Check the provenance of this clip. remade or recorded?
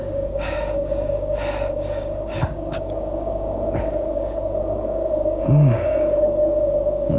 remade